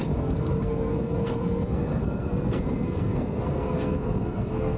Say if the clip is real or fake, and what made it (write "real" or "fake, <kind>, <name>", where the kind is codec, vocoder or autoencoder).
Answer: fake, codec, SNAC